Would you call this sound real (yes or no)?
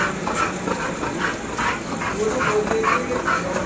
yes